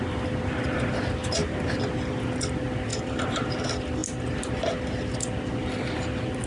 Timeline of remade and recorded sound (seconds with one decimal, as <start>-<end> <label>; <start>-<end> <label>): 0.0-1.2 recorded; 1.2-1.8 remade; 1.8-2.9 recorded; 2.9-3.5 remade; 3.5-6.5 recorded